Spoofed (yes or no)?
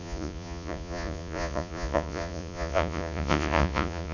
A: yes